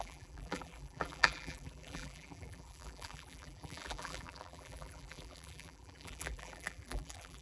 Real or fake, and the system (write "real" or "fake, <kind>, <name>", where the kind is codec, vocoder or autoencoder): fake, vocoder, BigVGAN v2